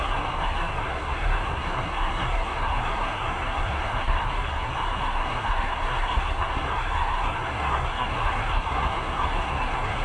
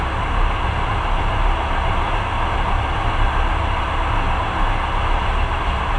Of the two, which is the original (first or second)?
second